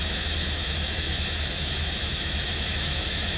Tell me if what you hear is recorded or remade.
remade